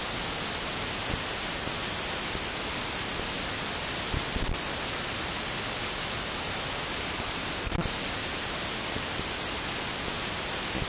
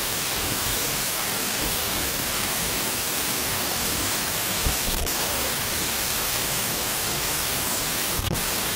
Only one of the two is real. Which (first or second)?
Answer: first